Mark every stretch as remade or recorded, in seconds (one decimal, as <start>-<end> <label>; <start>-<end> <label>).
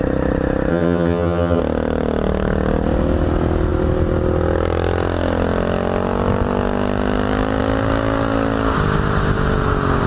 0.0-0.7 recorded; 0.7-1.6 remade; 1.6-10.1 recorded